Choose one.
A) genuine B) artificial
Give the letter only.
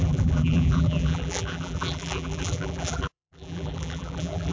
B